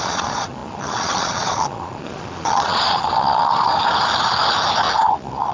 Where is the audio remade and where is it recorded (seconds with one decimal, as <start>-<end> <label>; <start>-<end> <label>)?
0.0-3.7 remade; 3.7-5.1 recorded; 5.1-5.5 remade